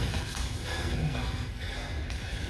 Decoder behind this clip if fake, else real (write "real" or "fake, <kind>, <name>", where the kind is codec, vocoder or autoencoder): fake, codec, SNAC